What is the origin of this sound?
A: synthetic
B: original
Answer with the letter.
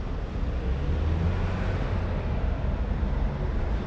B